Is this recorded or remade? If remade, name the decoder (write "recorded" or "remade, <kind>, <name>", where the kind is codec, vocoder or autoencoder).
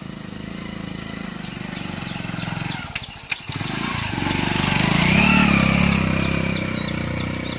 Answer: recorded